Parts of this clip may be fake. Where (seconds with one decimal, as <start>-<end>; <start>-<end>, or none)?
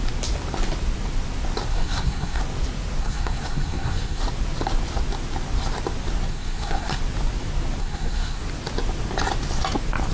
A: 1.7-2.4; 3.0-4.2; 6.3-7.0; 7.8-8.4